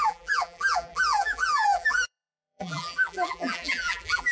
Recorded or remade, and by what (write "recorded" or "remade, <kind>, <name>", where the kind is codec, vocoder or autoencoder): remade, vocoder, BigVGAN v2